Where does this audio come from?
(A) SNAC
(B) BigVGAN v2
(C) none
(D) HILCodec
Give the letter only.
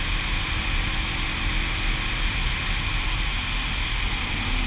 C